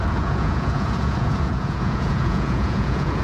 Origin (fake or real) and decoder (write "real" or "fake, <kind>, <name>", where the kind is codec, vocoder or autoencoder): fake, vocoder, Vocos